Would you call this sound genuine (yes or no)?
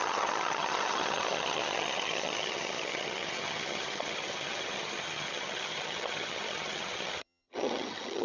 no